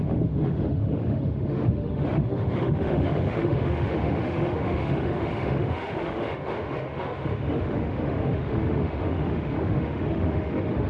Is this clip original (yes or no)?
no